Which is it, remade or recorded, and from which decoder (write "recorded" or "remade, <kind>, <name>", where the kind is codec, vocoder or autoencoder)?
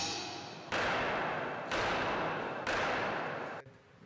recorded